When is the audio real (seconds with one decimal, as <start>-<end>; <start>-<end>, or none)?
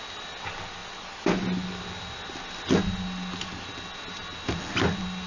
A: 0.0-5.3